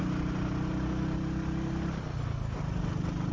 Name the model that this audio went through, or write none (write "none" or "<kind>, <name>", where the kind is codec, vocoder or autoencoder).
none